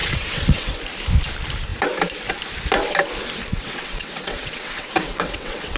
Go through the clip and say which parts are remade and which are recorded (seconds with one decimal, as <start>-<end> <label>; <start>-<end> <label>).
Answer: 0.0-0.8 remade; 0.8-3.5 recorded; 3.5-5.8 remade